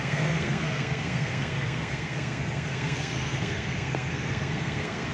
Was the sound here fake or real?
fake